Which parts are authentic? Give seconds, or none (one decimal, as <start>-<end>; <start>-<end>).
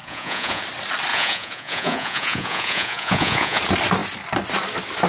0.6-1.1; 3.6-5.1